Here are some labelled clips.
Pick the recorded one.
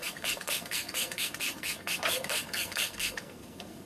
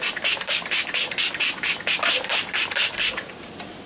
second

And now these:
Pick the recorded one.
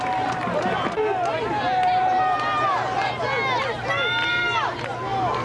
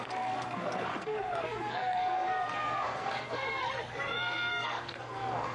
first